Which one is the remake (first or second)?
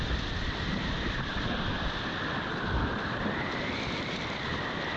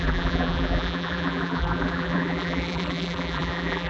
second